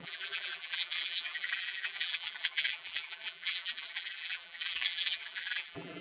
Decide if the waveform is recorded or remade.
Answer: remade